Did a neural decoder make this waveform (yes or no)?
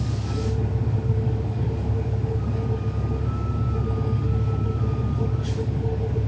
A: yes